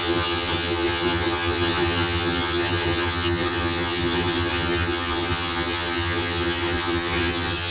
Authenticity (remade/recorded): remade